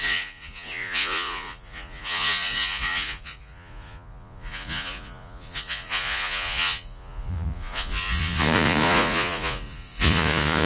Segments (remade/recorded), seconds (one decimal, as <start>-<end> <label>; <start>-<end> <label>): 0.0-10.7 remade